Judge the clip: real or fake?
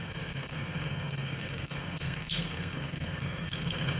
fake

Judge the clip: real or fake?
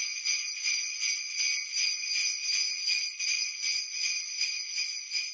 real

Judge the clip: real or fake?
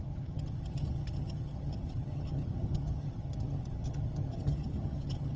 fake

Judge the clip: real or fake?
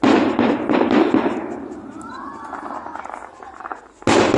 real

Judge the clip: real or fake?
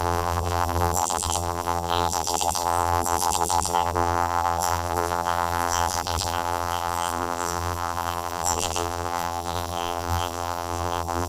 fake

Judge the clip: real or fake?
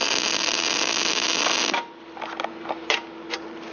real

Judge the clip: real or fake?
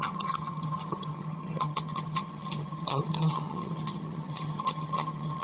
fake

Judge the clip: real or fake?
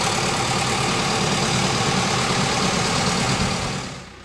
real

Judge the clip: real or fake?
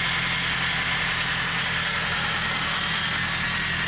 real